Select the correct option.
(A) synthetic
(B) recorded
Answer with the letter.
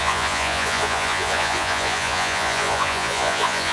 A